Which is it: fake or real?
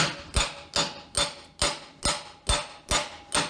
real